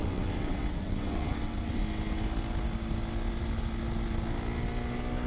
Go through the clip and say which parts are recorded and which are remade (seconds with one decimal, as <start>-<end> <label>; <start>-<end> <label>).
0.0-1.8 remade; 1.8-5.3 recorded